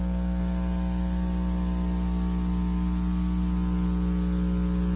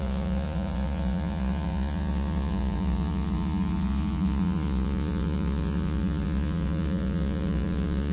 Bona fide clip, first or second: first